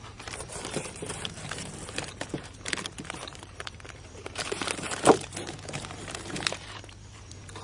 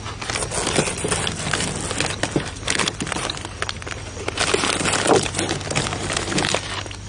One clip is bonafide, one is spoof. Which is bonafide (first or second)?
second